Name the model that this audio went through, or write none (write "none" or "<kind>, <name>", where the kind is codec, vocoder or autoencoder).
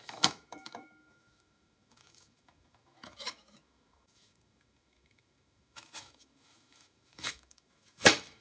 autoencoder, DAC-VAE